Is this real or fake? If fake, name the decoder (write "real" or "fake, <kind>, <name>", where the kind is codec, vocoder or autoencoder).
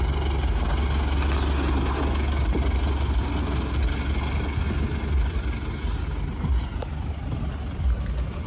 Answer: real